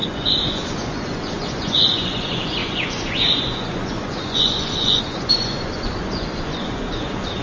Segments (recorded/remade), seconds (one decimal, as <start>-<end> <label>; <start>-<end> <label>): 0.0-7.4 remade